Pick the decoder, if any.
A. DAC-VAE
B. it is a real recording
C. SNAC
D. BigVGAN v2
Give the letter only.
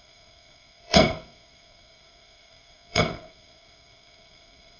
C